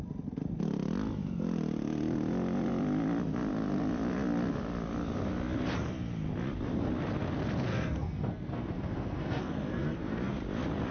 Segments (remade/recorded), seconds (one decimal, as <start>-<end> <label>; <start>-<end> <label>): 0.0-7.7 recorded; 7.7-10.3 remade; 10.3-10.9 recorded